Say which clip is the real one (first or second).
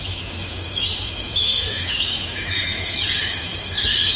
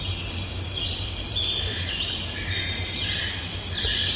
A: second